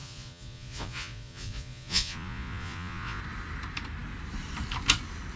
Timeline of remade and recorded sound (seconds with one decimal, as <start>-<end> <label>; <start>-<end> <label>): 0.0-3.2 remade; 3.2-5.4 recorded